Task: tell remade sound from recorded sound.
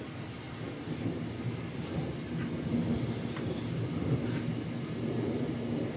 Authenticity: recorded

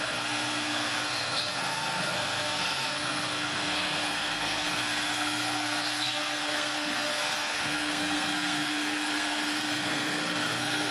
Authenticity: remade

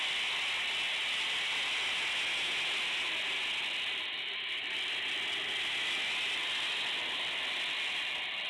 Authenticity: recorded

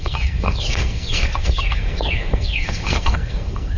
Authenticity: remade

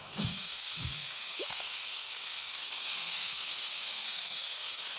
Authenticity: remade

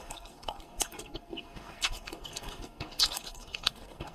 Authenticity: remade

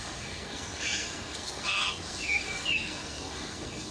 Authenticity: remade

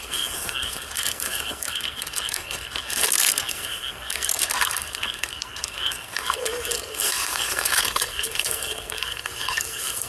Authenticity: remade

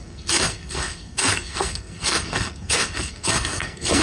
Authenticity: remade